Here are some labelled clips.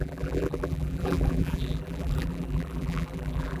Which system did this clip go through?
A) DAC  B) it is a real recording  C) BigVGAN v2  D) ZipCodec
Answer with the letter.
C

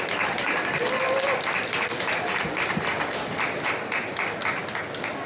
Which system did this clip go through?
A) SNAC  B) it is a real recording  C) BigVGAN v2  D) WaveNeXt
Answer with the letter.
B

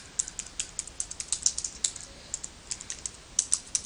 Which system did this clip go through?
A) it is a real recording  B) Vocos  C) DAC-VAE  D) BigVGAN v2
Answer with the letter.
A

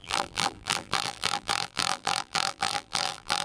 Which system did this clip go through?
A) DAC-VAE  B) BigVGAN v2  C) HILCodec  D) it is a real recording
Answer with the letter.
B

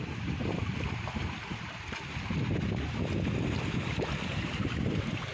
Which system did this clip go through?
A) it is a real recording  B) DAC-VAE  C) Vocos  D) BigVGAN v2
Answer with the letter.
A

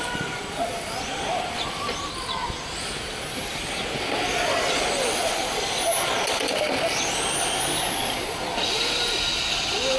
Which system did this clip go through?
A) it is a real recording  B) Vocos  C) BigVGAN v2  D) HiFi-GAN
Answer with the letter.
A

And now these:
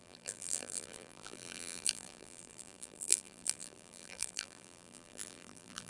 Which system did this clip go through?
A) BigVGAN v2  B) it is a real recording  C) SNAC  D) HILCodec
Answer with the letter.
A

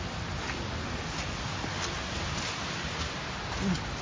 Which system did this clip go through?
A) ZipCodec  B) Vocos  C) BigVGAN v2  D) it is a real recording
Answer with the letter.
D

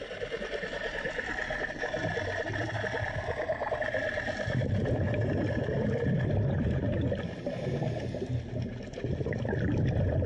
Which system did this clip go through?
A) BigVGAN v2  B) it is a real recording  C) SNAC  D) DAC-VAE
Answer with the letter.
B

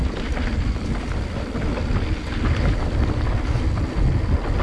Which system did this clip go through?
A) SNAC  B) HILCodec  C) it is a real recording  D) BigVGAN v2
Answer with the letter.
C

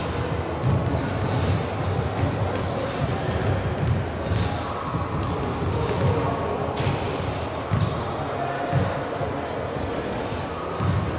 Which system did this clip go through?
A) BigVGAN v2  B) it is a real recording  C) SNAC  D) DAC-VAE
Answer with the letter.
B